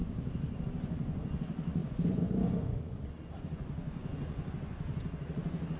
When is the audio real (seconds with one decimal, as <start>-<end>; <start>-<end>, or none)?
0.0-0.6